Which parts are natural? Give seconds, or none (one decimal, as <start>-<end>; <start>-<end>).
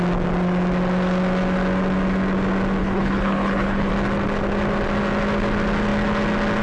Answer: 0.0-2.8; 3.9-6.6